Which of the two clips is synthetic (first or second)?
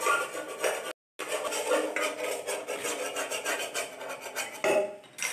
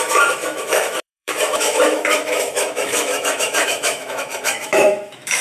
second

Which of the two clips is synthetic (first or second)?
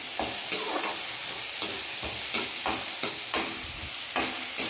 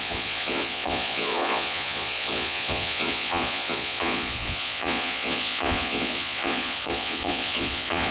second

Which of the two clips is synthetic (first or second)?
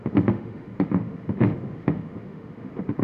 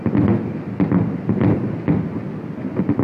first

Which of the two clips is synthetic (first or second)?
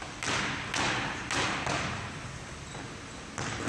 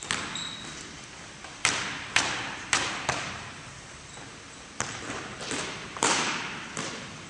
second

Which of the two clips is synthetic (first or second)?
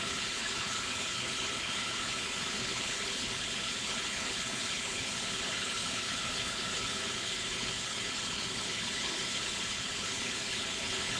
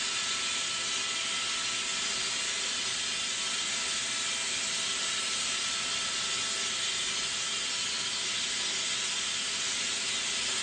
first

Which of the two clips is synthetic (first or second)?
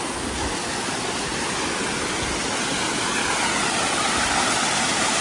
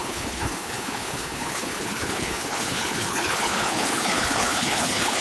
second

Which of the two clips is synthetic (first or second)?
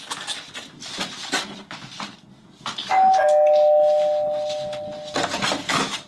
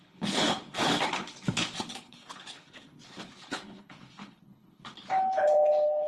second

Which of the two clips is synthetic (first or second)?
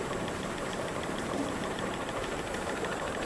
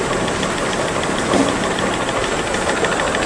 first